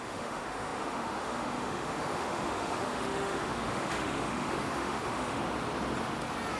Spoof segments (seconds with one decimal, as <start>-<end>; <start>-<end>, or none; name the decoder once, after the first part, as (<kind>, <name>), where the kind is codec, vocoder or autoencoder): 0.0-5.4 (autoencoder, DAC-VAE)